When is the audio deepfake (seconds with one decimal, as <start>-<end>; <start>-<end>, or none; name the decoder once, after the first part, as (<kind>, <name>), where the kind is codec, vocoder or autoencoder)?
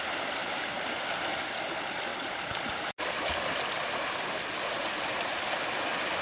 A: 0.4-1.0 (vocoder, BigVGAN v2); 2.1-2.6